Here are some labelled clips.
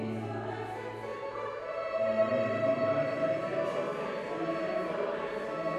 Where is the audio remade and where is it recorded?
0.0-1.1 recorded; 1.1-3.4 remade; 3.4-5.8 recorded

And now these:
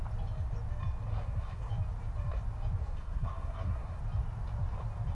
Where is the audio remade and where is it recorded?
0.0-1.1 recorded; 1.1-1.7 remade; 1.7-2.8 recorded; 2.8-4.0 remade; 4.0-5.1 recorded

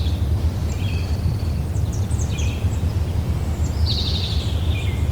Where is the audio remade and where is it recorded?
0.0-0.6 recorded; 0.6-3.7 remade; 3.7-5.1 recorded

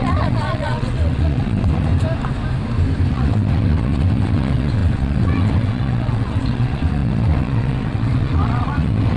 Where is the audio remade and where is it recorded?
0.0-1.9 remade; 1.9-3.1 recorded; 3.1-9.2 remade

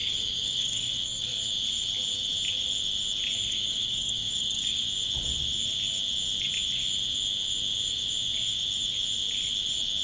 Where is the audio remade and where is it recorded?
0.0-0.9 remade; 0.9-3.5 recorded; 3.5-4.8 remade; 4.8-10.0 recorded

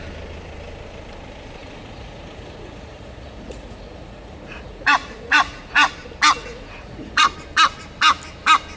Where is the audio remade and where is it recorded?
0.0-1.6 recorded; 1.6-5.9 remade; 5.9-6.4 recorded; 6.4-7.3 remade; 7.3-8.8 recorded

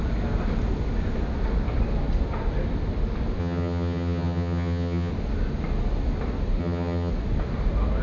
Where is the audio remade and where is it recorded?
0.0-3.4 recorded; 3.4-5.1 remade; 5.1-6.6 recorded; 6.6-7.1 remade; 7.1-8.0 recorded